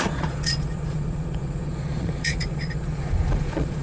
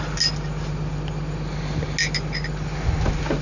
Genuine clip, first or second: second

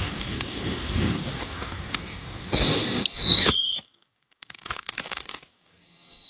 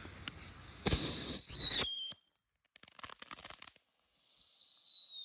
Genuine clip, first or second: second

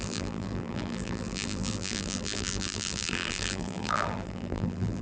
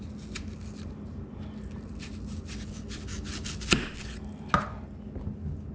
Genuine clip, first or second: second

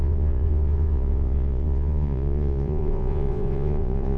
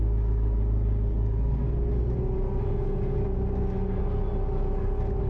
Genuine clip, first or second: second